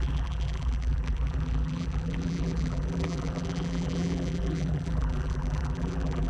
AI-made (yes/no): yes